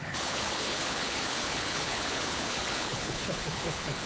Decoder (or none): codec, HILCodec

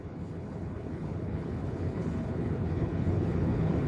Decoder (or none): codec, HILCodec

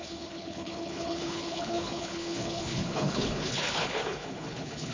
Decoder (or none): codec, HILCodec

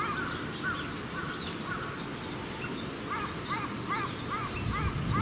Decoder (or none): none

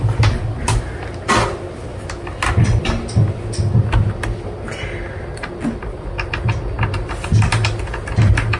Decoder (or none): none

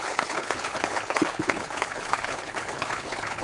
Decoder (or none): codec, HILCodec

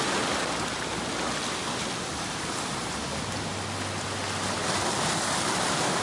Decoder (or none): none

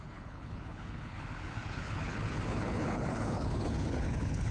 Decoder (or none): codec, HILCodec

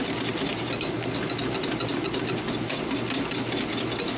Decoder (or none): none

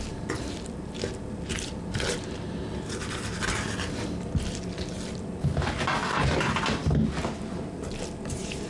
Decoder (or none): none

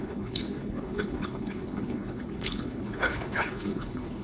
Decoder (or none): codec, HILCodec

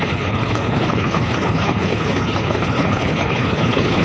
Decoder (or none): codec, HILCodec